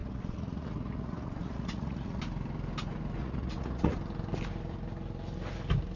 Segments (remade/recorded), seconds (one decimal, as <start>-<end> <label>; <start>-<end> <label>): 0.0-2.2 remade; 2.2-3.2 recorded; 3.2-3.9 remade; 3.9-6.0 recorded